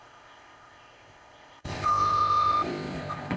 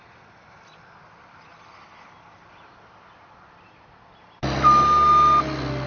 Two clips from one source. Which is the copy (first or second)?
first